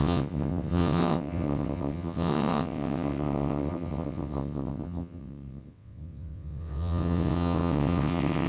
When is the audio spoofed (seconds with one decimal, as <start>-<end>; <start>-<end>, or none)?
0.0-8.5